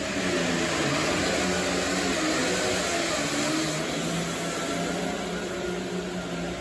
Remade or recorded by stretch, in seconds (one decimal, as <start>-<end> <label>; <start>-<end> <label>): 0.0-6.6 recorded